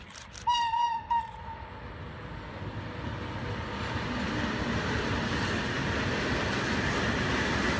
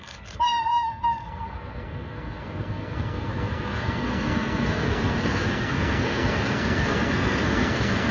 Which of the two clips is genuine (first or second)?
first